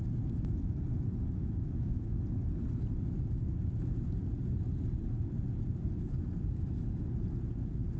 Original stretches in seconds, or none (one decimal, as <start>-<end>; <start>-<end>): 0.0-1.4; 2.2-8.0